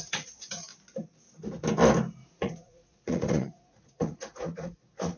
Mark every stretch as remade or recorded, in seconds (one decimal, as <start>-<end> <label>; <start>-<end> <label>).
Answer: 0.0-0.7 remade; 0.7-2.3 recorded; 2.3-5.2 remade